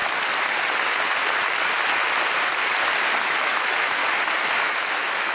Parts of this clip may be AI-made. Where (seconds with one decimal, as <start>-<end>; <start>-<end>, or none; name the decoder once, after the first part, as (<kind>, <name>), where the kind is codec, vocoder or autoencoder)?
3.2-4.0 (autoencoder, DAC-VAE); 4.6-5.3